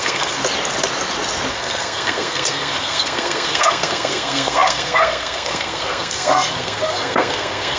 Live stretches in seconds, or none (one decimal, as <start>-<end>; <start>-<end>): 0.4-1.5